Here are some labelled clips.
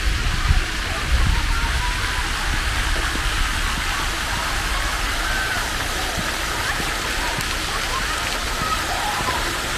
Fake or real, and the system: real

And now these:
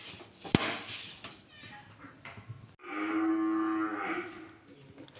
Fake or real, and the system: real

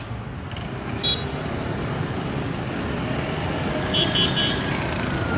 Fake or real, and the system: real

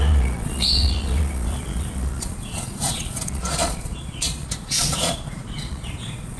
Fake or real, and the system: fake, vocoder, Vocos